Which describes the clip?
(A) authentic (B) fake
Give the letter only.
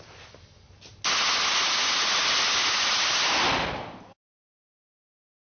A